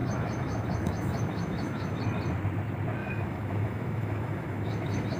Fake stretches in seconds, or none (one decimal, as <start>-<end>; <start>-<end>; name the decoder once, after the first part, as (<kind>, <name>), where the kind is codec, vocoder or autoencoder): 0.0-2.0 (autoencoder, DAC-VAE); 3.0-5.2